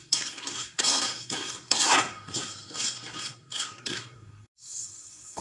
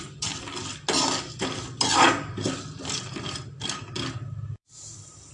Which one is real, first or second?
second